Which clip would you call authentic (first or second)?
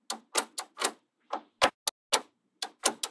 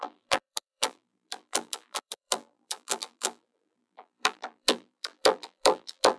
first